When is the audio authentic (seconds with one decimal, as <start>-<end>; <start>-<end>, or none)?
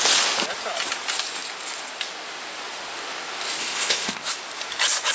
0.0-3.6; 4.3-5.1